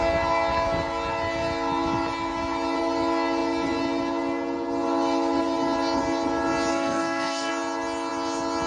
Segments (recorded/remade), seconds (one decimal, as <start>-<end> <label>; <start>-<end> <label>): 0.0-6.7 recorded; 6.7-7.5 remade; 7.5-8.7 recorded